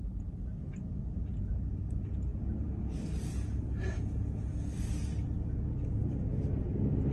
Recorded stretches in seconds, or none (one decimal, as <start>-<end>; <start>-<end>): 0.0-7.1